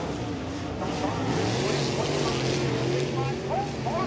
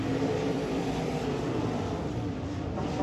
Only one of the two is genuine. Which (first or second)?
first